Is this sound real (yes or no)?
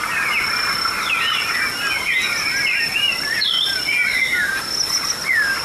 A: yes